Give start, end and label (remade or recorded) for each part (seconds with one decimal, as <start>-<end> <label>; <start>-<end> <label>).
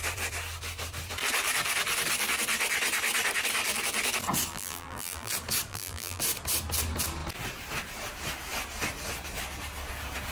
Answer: 0.0-4.5 recorded; 4.5-5.3 remade; 5.3-5.7 recorded; 5.7-6.2 remade; 6.2-10.3 recorded